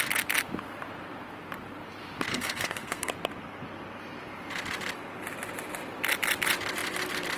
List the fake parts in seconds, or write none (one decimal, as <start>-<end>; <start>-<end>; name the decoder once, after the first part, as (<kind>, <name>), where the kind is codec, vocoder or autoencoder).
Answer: 2.3-3.1 (codec, SNAC)